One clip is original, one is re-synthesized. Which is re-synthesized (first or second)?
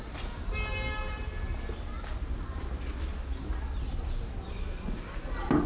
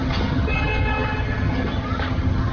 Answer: second